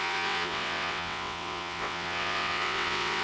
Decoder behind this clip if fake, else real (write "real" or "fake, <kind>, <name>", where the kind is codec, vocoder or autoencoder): fake, vocoder, WaveNeXt